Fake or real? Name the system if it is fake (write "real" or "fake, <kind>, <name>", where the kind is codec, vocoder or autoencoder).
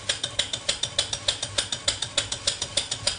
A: real